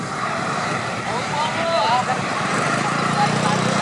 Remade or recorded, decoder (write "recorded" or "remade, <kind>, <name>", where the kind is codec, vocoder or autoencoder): remade, vocoder, BigVGAN v2